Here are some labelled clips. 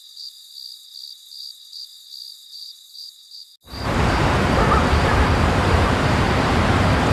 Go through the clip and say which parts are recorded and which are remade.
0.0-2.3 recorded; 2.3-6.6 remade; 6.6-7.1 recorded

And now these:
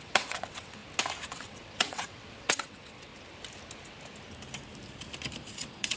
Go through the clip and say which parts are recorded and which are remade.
0.0-0.8 remade; 0.8-1.3 recorded; 1.3-3.1 remade; 3.1-5.6 recorded; 5.6-6.0 remade

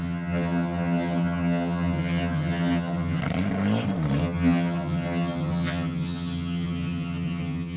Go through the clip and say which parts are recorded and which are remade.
0.0-3.2 remade; 3.2-4.2 recorded; 4.2-7.8 remade

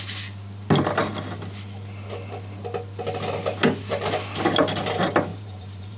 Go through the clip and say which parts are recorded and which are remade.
0.0-5.3 recorded; 5.3-6.0 remade

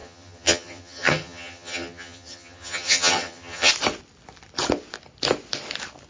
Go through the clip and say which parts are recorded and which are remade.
0.0-3.7 remade; 3.7-6.1 recorded

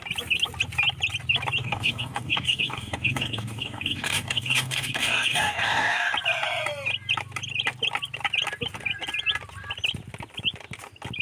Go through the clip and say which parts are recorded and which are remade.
0.0-1.6 recorded; 1.6-6.1 remade; 6.1-11.2 recorded

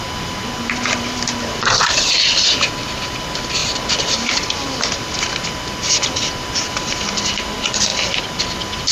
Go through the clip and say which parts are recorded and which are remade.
0.0-8.9 recorded

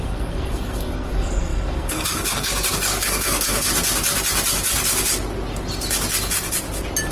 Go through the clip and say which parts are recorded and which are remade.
0.0-3.7 remade; 3.7-7.1 recorded